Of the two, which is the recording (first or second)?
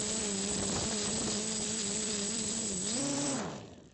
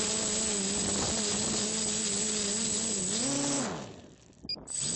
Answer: second